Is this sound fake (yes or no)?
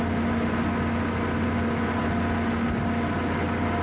no